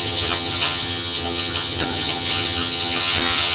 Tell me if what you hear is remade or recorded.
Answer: remade